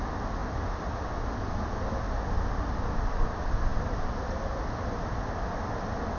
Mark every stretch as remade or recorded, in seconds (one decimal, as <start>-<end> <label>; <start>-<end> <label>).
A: 0.0-3.7 recorded; 3.7-4.5 remade; 4.5-6.2 recorded